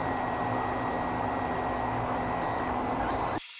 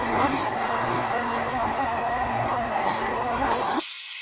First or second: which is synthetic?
second